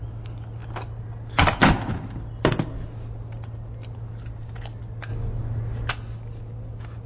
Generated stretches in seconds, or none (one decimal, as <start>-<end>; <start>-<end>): none